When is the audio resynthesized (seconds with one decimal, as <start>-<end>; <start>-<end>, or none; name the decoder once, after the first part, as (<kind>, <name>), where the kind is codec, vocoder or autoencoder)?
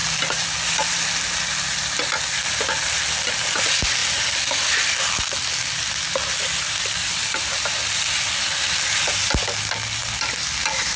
none